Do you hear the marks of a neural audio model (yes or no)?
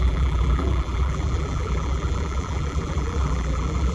yes